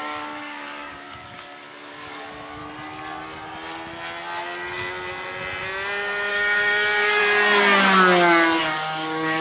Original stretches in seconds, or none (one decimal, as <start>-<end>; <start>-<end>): 2.6-6.3; 7.2-8.6